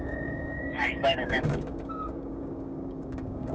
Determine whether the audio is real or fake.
fake